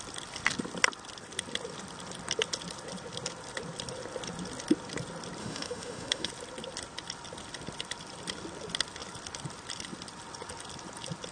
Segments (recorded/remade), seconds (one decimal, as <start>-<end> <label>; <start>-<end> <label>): 0.0-5.4 recorded; 5.4-6.3 remade; 6.3-11.3 recorded